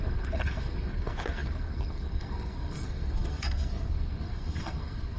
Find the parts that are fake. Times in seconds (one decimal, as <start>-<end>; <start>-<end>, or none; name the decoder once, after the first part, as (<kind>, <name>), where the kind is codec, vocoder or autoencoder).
0.0-5.2 (codec, SNAC)